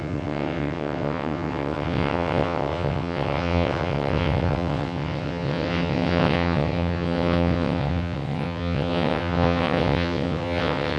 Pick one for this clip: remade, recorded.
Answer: remade